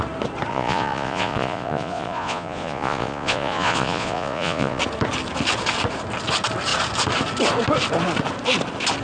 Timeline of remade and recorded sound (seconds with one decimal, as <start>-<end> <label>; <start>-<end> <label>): 0.0-0.5 recorded; 0.5-4.8 remade; 4.8-9.0 recorded